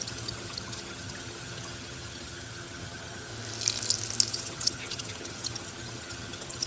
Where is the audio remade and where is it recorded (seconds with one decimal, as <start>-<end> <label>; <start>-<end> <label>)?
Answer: 0.0-3.3 remade; 3.3-4.3 recorded; 4.3-6.7 remade